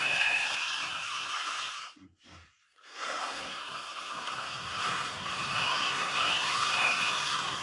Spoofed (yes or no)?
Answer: yes